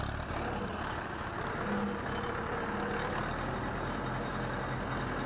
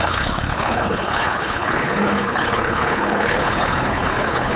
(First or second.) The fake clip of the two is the second